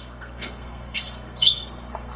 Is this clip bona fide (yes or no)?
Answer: no